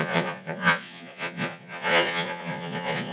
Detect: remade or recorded remade